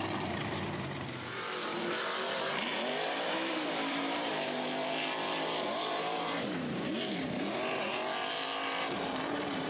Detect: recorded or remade remade